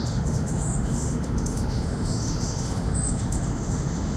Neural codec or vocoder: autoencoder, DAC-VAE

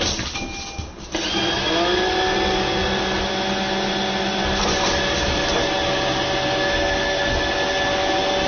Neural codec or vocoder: none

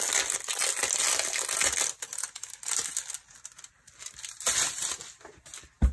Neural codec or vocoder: none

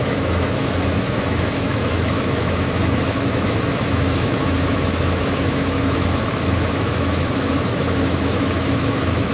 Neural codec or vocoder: autoencoder, DAC-VAE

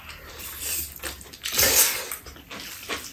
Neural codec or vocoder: none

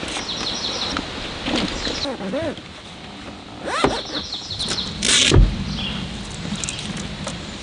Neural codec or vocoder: none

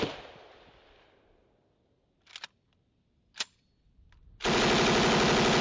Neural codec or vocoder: none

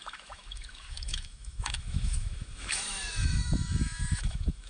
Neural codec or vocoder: autoencoder, DAC-VAE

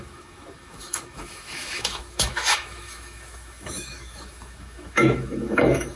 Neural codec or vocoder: autoencoder, DAC-VAE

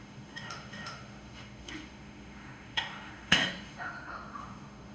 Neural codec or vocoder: autoencoder, DAC-VAE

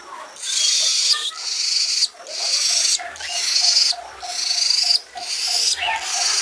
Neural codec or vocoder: none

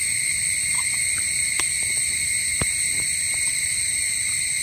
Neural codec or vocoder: none